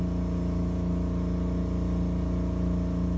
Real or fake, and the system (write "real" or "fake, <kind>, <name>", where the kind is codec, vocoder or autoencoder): real